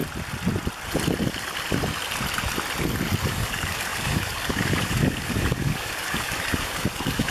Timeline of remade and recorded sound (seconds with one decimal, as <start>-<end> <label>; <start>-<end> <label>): 0.0-3.2 recorded; 3.2-7.3 remade